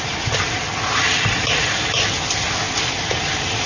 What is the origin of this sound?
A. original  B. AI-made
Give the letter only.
A